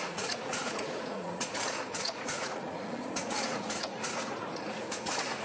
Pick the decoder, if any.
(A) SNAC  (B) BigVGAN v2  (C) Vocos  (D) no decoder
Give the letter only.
C